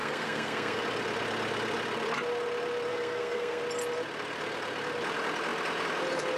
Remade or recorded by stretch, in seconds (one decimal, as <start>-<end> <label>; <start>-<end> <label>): 0.0-0.8 remade; 0.8-2.9 recorded; 2.9-3.6 remade; 3.6-6.4 recorded